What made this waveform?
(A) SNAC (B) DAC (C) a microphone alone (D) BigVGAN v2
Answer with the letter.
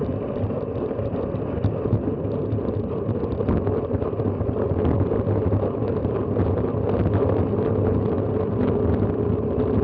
C